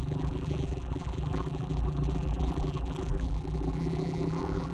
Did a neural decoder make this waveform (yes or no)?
yes